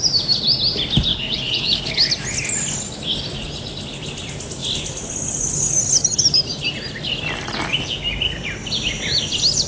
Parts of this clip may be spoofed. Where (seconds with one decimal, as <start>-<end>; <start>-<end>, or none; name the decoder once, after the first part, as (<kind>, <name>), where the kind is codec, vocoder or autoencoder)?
1.1-2.1 (codec, HILCodec)